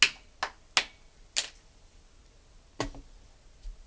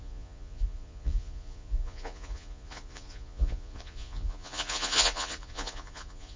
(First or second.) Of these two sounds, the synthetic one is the second